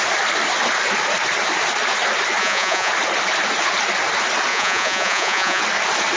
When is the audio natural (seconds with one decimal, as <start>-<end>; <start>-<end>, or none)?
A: 0.0-2.4; 2.9-4.5; 5.6-6.2